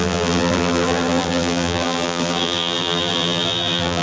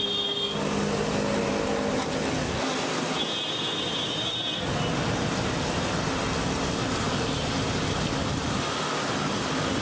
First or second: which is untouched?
second